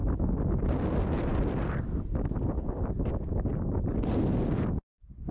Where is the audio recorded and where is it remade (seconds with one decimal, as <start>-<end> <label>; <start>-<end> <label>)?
0.0-5.3 recorded